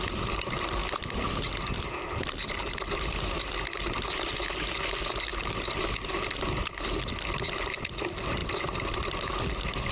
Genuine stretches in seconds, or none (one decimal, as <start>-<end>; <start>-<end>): 0.0-9.9